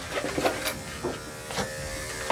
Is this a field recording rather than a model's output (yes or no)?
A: yes